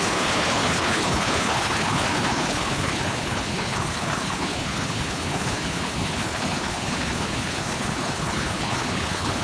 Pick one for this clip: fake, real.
fake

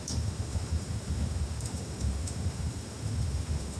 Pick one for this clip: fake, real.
fake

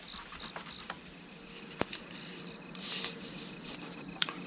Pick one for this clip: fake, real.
real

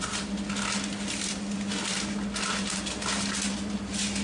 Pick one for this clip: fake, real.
real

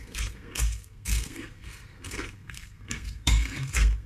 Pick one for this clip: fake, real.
fake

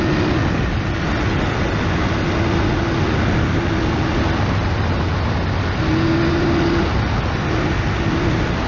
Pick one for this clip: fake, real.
real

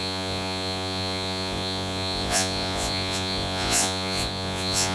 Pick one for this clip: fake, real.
fake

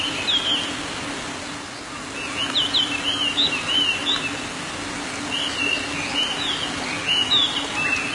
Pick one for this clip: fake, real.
real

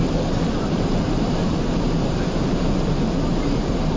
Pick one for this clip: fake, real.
fake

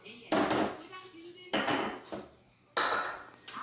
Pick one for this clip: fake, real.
real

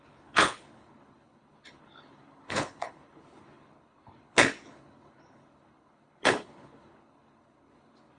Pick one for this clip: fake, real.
fake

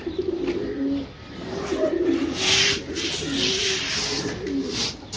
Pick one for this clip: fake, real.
real